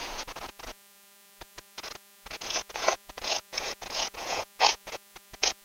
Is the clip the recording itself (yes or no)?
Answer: no